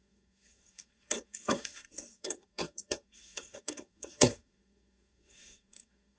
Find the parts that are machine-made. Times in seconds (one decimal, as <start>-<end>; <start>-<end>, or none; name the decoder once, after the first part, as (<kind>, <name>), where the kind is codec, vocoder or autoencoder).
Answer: 0.0-6.2 (codec, SNAC)